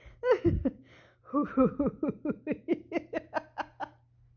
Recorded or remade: recorded